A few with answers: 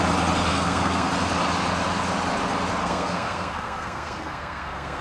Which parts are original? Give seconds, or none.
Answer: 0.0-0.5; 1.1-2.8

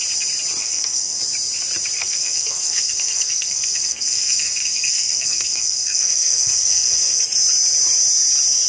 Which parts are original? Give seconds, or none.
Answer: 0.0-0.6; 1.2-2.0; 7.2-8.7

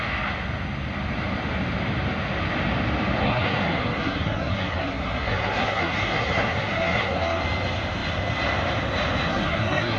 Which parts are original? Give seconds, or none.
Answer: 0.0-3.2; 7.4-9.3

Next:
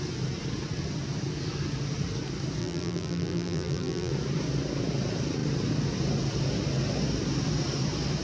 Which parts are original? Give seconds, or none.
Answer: 0.0-2.6; 4.1-8.2

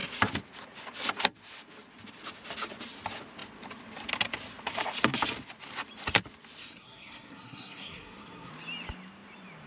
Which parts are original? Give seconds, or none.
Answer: 0.0-6.6; 8.5-9.7